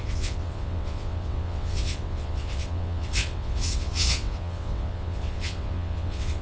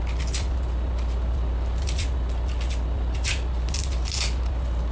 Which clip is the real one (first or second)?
second